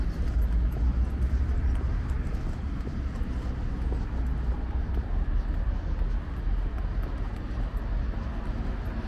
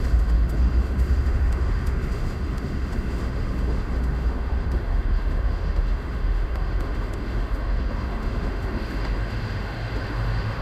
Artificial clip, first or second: second